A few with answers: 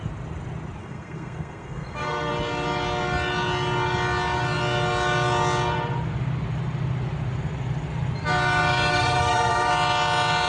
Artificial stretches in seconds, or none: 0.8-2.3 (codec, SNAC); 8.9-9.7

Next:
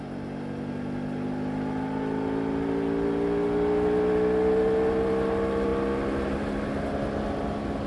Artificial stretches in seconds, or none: none

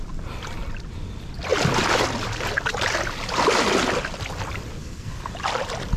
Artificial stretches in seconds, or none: 4.8-5.3 (codec, SNAC)

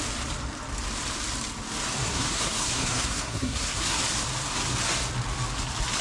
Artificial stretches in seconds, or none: 2.0-4.0 (codec, SNAC)

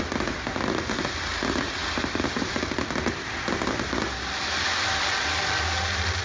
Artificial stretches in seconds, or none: none

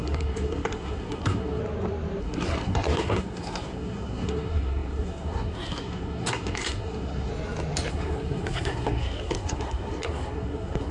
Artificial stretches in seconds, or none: 0.0-1.6 (codec, SNAC); 2.2-7.3; 7.9-10.9

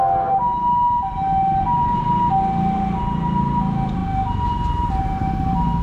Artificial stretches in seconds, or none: none

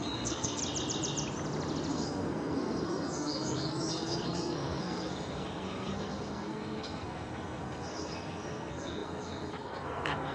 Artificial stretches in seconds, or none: 0.0-0.6 (codec, SNAC); 1.9-10.3